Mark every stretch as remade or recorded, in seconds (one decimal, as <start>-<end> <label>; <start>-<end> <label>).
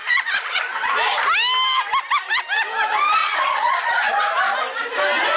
0.0-0.6 remade; 0.6-3.2 recorded; 3.2-4.1 remade; 4.1-5.4 recorded